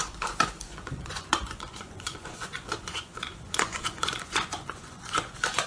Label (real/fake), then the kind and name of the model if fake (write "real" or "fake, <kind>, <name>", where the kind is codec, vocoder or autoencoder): fake, vocoder, Vocos